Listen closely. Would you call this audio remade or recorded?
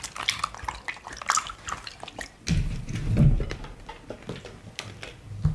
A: recorded